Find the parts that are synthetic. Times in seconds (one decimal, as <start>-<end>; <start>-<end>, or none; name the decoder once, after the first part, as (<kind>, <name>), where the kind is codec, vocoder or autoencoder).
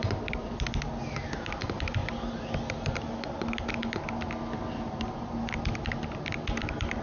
none